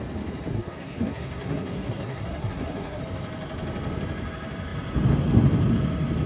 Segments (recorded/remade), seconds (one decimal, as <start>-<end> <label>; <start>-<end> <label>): 0.0-0.5 recorded; 0.5-3.0 remade; 3.0-6.3 recorded